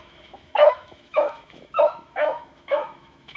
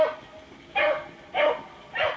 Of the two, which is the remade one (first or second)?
first